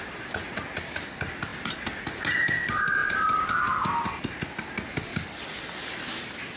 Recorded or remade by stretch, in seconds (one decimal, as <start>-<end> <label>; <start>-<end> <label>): 0.0-1.5 recorded; 1.5-2.2 remade; 2.2-6.6 recorded